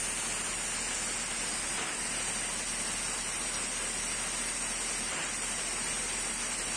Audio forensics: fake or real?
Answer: real